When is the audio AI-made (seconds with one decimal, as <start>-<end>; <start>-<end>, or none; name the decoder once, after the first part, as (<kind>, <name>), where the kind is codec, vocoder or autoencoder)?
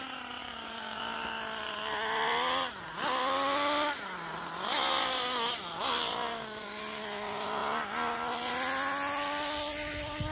0.4-1.0 (codec, DAC); 6.3-6.8